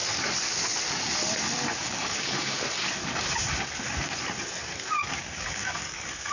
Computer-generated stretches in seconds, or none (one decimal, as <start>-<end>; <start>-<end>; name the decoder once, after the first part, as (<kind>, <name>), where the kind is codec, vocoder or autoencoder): 1.8-2.6 (codec, DAC); 5.0-6.3